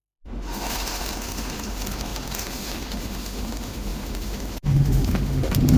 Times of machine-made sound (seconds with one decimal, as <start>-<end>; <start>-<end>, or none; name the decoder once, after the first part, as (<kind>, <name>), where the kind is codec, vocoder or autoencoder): 0.0-5.8 (autoencoder, DAC-VAE)